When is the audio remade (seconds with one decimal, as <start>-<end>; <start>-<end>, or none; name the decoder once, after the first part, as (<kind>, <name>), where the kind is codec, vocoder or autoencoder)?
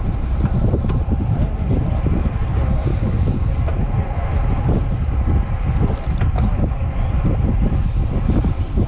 2.9-3.5 (codec, DAC)